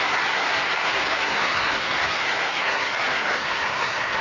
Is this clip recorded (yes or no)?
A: no